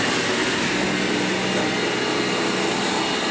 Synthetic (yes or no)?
no